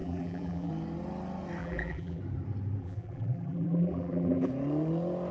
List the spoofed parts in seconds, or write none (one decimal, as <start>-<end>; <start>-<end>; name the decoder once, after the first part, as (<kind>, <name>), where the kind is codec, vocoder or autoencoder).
0.0-0.7 (vocoder, BigVGAN v2); 1.6-2.2; 2.8-4.5